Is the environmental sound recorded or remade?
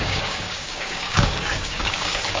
remade